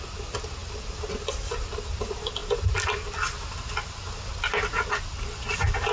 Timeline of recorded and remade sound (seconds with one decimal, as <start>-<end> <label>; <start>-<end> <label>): 0.0-5.9 recorded